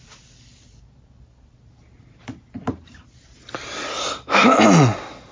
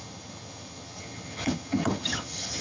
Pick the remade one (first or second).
second